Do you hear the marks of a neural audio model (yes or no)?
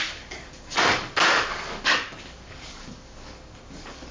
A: yes